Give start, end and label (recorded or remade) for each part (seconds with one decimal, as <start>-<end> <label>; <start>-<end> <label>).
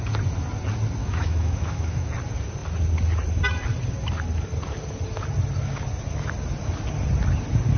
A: 0.0-1.0 recorded; 1.0-2.1 remade; 2.1-7.8 recorded